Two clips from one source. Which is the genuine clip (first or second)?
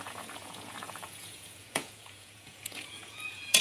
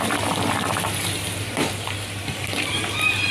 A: second